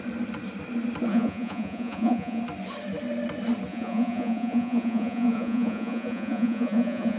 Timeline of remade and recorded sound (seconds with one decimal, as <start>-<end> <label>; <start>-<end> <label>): 0.0-1.1 recorded; 1.1-2.4 remade; 2.4-3.7 recorded; 3.7-7.2 remade